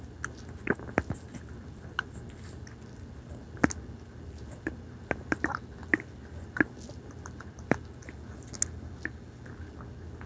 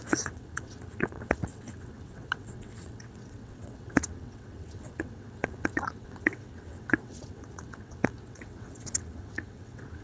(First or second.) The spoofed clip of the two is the second